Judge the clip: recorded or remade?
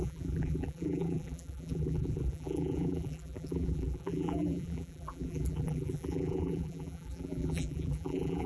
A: remade